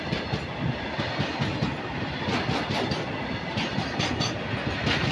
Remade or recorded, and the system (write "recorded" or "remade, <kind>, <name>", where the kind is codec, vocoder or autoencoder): recorded